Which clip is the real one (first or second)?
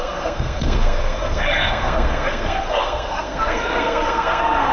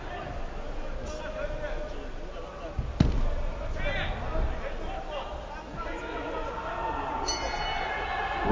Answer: second